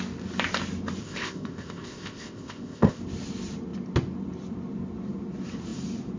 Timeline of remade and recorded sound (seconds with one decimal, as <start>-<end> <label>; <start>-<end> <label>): 0.0-1.0 recorded; 1.0-3.0 remade; 3.0-6.2 recorded